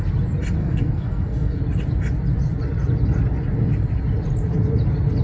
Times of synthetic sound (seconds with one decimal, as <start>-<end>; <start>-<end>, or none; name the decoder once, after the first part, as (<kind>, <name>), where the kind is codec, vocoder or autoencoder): 0.6-1.6 (codec, SNAC)